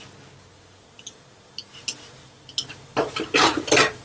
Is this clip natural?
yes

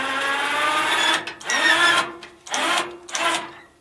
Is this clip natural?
yes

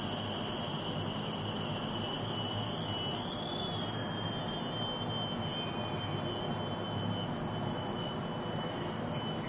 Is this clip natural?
yes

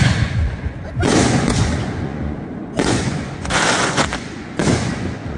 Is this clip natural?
no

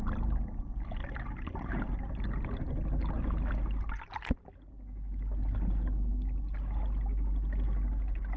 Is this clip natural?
yes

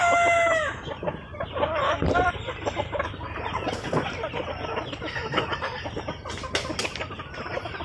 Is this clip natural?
yes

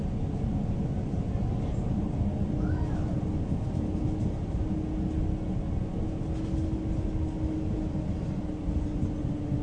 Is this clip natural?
yes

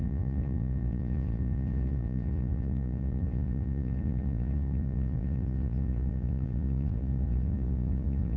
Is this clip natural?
no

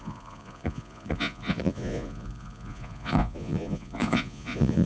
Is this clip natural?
no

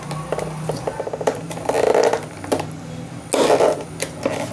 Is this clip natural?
yes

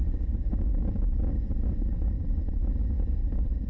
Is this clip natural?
yes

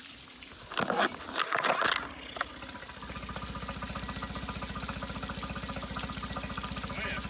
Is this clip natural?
yes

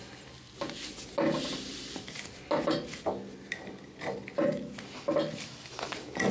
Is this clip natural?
yes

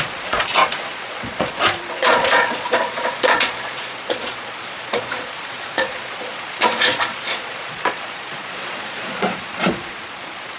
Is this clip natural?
no